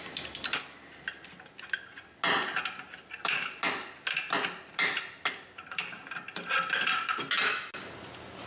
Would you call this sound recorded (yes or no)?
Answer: yes